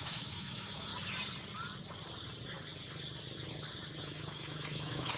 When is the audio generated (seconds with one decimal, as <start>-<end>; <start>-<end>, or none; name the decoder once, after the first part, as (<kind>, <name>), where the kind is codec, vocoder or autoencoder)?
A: 0.0-0.9 (autoencoder, DAC-VAE); 4.0-5.2